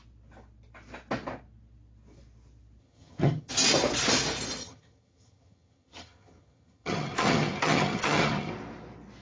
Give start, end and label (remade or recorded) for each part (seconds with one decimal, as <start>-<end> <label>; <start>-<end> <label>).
0.0-2.8 recorded; 2.8-3.5 remade; 3.5-4.6 recorded; 4.6-8.5 remade; 8.5-9.2 recorded